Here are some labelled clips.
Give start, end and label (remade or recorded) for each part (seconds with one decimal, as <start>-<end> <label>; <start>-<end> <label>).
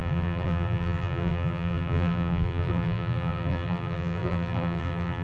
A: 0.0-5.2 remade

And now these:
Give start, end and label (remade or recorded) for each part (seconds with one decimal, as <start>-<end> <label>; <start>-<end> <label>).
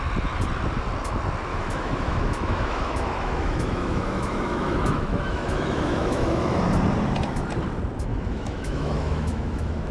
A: 0.0-1.5 recorded; 1.5-6.6 remade; 6.6-8.1 recorded; 8.1-9.9 remade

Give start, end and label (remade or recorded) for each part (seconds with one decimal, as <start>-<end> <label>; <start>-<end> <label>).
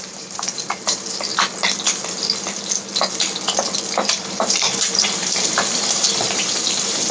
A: 0.0-1.3 remade; 1.3-4.2 recorded; 4.2-7.1 remade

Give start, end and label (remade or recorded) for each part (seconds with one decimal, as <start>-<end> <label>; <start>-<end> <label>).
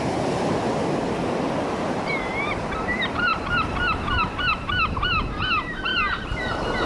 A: 0.0-6.9 remade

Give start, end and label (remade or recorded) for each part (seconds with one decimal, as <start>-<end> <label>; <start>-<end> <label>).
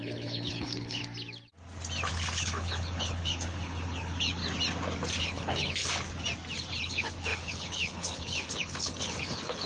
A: 0.0-1.0 remade; 1.0-2.1 recorded; 2.1-4.4 remade; 4.4-5.2 recorded; 5.2-5.8 remade; 5.8-6.8 recorded; 6.8-9.7 remade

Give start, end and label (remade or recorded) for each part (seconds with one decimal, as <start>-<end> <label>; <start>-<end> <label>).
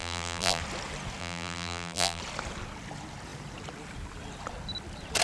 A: 0.0-0.6 remade; 0.6-1.2 recorded; 1.2-2.2 remade; 2.2-5.2 recorded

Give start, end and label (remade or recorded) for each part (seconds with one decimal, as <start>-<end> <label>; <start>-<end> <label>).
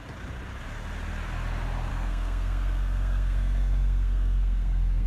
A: 0.0-1.9 recorded; 1.9-5.1 remade